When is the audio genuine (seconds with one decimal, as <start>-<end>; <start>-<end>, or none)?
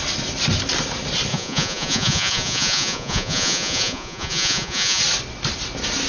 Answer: 0.0-1.3; 5.0-6.1